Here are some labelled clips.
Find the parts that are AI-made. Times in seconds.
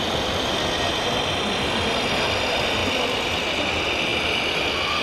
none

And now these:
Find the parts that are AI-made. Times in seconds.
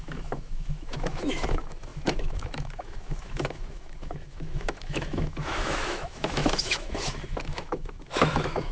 0.0-8.7 (autoencoder, DAC-VAE)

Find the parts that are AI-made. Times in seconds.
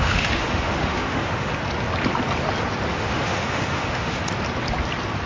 0.0-1.5 (autoencoder, DAC-VAE); 2.9-4.2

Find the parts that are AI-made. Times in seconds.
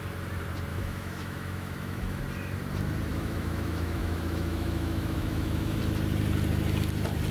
0.7-2.2 (autoencoder, DAC-VAE); 3.1-5.8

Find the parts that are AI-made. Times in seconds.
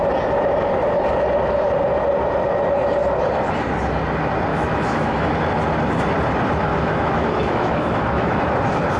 4.5-5.3 (autoencoder, DAC-VAE); 6.7-8.4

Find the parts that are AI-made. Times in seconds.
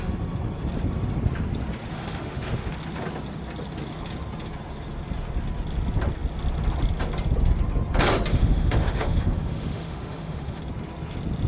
1.9-2.7 (autoencoder, DAC-VAE); 8.3-10.6